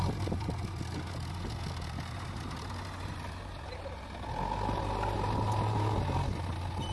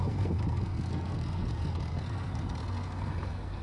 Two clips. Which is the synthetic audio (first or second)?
second